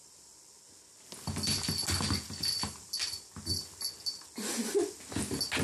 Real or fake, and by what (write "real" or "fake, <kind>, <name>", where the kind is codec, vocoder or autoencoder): real